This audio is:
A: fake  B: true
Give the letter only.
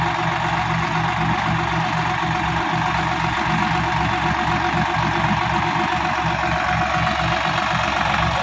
B